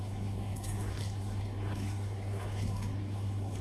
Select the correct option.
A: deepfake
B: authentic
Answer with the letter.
A